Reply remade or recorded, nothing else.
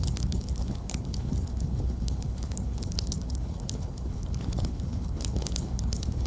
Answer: remade